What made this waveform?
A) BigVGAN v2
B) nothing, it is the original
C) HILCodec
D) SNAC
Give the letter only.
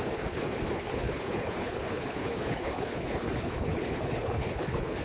C